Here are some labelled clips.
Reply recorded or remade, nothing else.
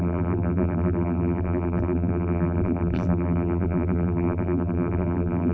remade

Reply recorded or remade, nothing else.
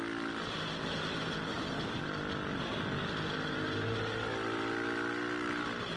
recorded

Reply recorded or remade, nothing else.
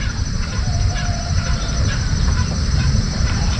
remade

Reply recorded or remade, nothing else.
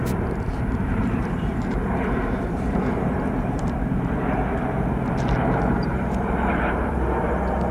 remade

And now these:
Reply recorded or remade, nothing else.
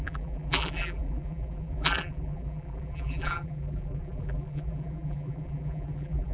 remade